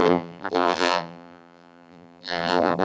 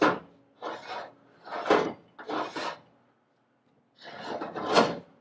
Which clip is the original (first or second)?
second